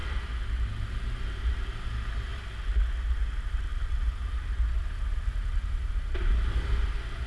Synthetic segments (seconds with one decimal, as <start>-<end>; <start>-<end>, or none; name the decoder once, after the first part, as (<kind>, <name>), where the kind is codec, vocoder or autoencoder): none